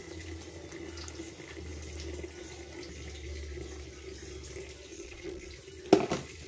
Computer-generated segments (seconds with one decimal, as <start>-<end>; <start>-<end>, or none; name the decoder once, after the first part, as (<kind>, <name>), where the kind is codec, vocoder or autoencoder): 4.9-5.5 (vocoder, Vocos)